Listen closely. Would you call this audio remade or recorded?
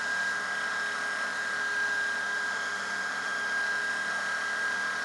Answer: remade